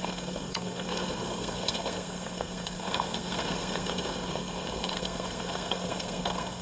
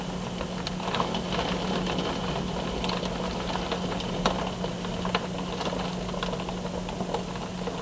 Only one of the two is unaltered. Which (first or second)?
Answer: second